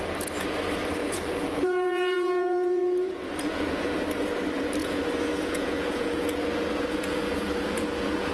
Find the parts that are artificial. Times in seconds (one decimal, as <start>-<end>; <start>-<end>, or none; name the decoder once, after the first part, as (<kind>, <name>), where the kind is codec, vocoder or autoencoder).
1.0-3.9 (vocoder, Vocos); 4.8-8.3